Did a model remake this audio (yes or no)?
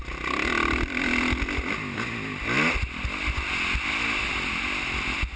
no